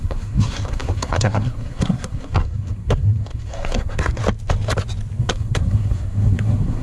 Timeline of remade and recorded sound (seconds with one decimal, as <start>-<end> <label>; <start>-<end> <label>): 0.0-4.2 remade; 4.2-5.2 recorded; 5.2-6.8 remade